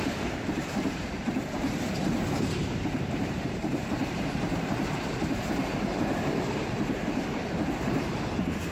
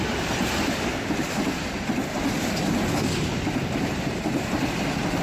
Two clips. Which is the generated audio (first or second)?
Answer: first